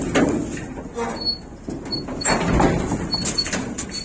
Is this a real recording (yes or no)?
yes